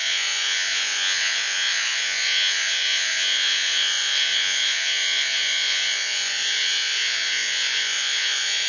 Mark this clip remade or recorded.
remade